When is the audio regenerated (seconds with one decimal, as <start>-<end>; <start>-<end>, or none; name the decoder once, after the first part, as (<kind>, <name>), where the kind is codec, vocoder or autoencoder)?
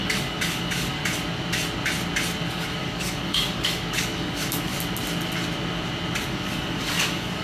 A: 0.0-1.0 (codec, DAC); 2.5-4.7; 6.2-7.4